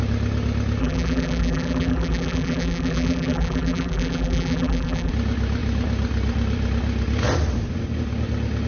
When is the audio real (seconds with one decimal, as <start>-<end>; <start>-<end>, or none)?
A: 0.0-0.8; 5.1-8.7